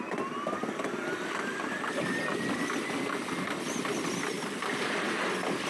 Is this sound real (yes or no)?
yes